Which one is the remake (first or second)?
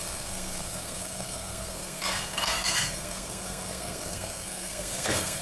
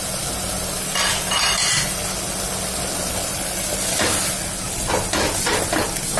first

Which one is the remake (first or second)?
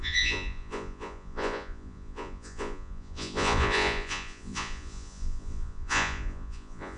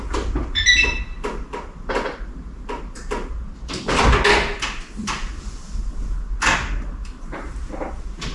first